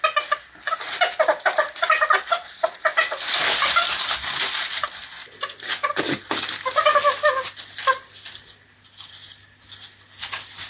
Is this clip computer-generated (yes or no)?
no